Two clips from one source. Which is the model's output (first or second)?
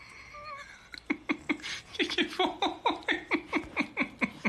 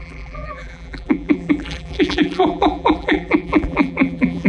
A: second